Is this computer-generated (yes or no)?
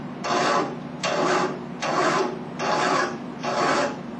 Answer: yes